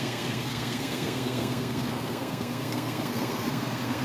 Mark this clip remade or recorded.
remade